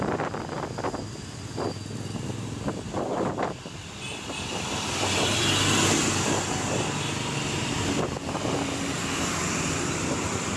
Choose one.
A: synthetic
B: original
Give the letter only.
B